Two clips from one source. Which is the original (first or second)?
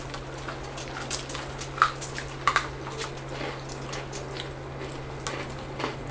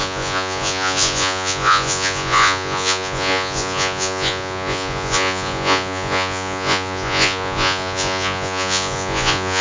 first